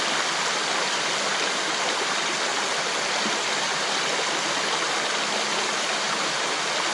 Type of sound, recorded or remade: recorded